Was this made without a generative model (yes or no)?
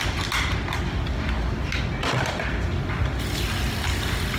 yes